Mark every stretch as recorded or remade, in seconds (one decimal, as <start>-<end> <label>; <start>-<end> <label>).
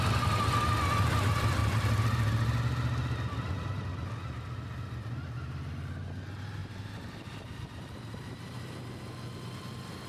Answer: 0.0-1.6 recorded; 1.6-2.6 remade; 2.6-6.6 recorded; 6.6-8.8 remade; 8.8-10.1 recorded